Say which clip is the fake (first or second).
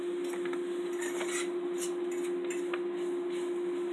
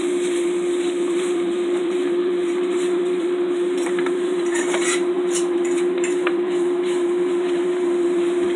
second